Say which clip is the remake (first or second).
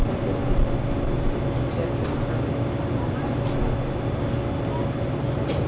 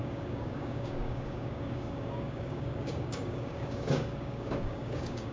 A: second